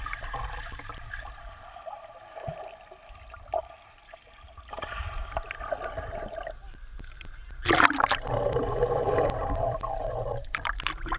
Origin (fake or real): fake